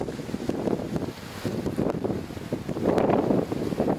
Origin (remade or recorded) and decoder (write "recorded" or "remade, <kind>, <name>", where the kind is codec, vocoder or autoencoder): recorded